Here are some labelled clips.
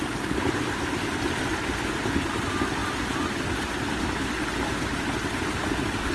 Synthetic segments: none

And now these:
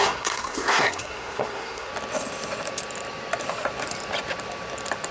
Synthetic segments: 0.0-1.9 (codec, SNAC)